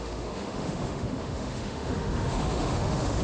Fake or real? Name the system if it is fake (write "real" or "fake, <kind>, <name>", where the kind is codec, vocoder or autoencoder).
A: fake, autoencoder, DAC-VAE